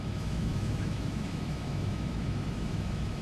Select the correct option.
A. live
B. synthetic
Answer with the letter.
B